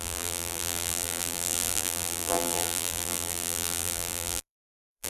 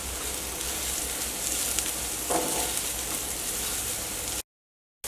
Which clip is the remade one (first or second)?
first